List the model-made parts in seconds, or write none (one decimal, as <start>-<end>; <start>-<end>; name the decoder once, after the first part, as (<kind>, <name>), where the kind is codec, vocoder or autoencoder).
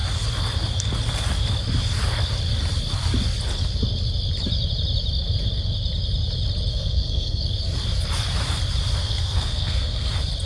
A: 6.7-7.4 (codec, SNAC); 9.0-10.1